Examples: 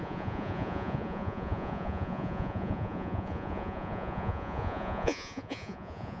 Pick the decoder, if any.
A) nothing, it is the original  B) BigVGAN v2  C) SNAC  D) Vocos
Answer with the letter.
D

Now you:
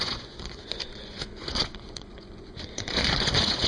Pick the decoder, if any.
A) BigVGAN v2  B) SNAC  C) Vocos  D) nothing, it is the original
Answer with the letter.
C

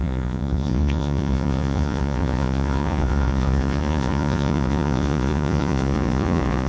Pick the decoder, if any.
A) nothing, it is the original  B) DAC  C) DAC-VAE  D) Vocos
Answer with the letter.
D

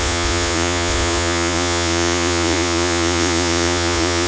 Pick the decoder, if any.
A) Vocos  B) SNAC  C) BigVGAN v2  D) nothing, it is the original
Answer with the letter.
A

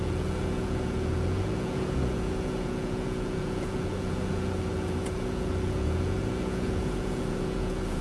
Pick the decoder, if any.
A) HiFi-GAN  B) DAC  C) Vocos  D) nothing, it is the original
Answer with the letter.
C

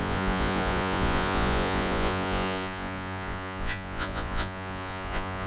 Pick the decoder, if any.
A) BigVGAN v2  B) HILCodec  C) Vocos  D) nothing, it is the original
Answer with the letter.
C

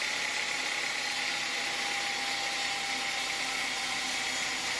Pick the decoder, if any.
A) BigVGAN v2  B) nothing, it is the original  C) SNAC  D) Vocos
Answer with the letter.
B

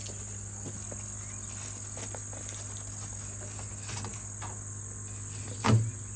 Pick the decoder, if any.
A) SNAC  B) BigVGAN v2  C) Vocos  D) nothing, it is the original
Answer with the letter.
D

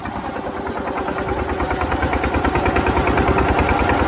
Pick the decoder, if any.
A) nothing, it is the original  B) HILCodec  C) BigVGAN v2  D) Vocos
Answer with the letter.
A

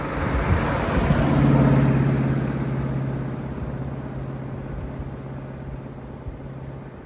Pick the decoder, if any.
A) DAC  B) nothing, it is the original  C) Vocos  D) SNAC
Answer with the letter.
B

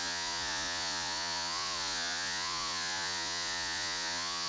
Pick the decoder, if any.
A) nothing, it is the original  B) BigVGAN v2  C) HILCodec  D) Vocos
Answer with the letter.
D